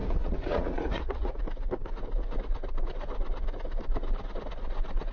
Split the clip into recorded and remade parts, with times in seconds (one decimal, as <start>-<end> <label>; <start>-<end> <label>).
0.0-1.4 remade; 1.4-5.1 recorded